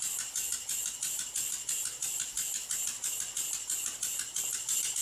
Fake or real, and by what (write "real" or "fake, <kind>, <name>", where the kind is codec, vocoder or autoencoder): real